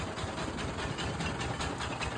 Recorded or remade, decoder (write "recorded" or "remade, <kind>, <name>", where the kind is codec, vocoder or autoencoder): recorded